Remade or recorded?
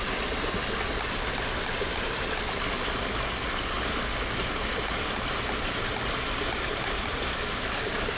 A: recorded